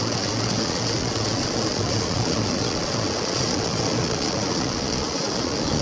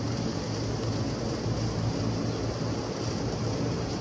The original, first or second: second